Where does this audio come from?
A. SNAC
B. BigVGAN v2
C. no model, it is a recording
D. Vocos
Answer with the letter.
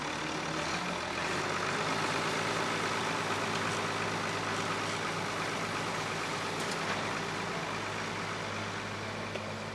C